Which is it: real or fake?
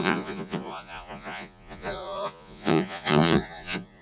fake